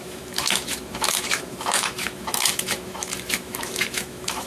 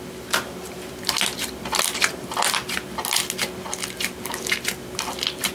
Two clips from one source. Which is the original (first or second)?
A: second